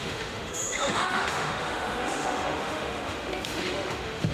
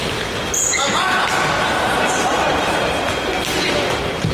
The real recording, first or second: second